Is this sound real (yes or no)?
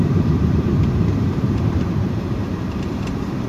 no